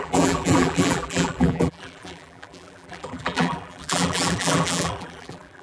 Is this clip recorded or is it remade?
remade